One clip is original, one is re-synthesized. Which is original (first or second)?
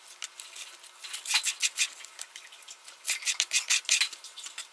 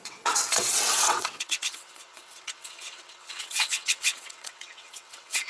first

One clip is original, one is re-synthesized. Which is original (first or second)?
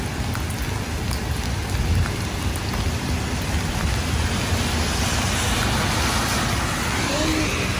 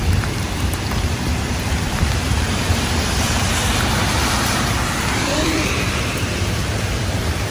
first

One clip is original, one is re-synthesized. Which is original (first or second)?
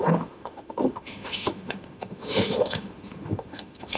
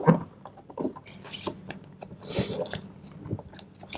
second